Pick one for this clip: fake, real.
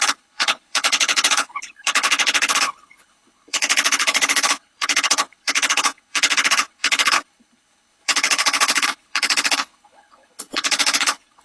fake